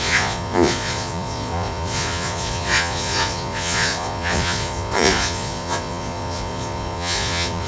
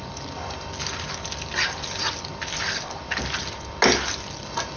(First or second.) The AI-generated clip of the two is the first